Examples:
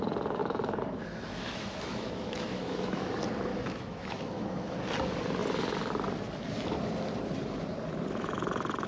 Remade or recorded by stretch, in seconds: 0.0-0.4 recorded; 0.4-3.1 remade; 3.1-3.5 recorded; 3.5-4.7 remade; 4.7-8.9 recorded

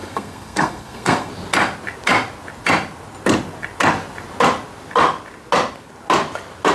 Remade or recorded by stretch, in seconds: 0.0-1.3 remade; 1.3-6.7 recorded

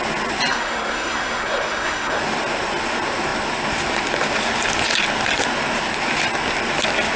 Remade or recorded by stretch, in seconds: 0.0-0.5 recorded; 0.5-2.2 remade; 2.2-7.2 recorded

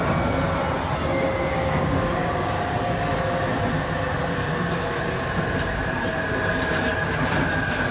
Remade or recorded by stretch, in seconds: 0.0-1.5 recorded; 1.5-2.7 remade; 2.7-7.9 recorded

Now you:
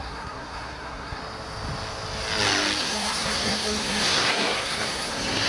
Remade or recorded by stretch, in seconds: 0.0-1.2 remade; 1.2-2.8 recorded; 2.8-5.5 remade

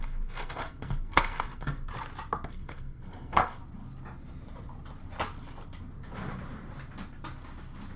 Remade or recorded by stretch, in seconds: 0.0-1.9 remade; 1.9-2.5 recorded; 2.5-3.6 remade; 3.6-8.0 recorded

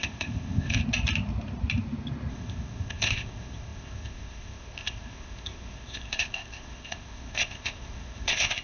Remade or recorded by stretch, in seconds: 0.0-0.8 remade; 0.8-2.3 recorded; 2.3-8.6 remade